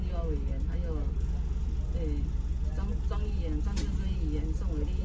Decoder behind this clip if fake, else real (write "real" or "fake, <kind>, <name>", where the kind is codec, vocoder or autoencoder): real